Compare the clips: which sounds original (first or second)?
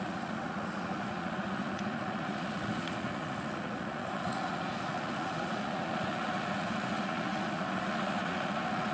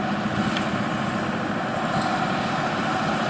second